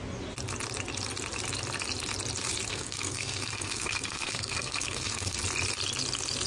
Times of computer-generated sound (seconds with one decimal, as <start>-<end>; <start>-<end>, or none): 2.7-5.4